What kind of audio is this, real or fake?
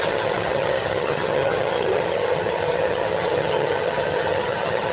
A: fake